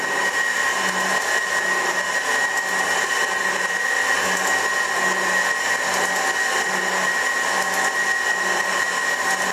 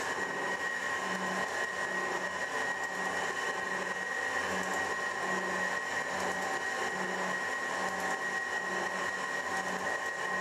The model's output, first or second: first